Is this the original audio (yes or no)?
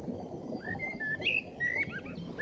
yes